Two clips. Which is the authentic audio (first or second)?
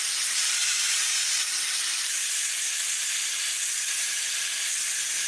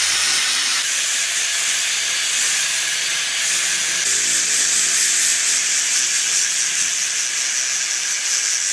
second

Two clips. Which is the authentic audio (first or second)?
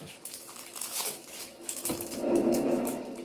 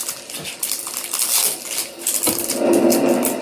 second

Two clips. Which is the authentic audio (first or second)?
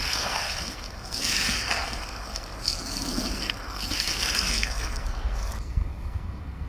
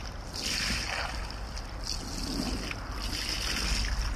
second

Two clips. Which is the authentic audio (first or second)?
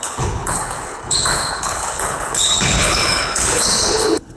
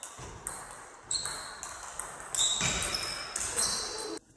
second